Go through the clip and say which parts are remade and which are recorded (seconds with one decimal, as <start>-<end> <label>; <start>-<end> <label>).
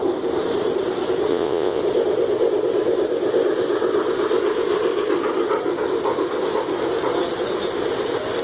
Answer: 0.0-1.3 recorded; 1.3-1.8 remade; 1.8-8.4 recorded